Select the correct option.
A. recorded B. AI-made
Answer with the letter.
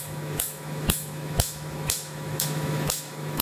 B